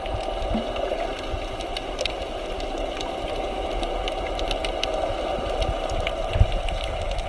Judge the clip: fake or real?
real